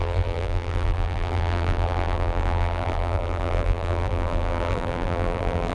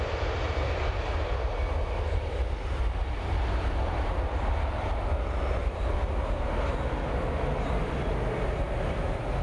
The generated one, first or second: first